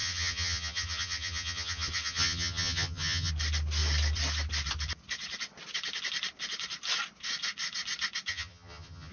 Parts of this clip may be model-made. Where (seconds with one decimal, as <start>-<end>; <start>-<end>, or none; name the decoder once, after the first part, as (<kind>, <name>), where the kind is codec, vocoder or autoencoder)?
0.0-3.3 (vocoder, HiFi-GAN); 8.3-9.1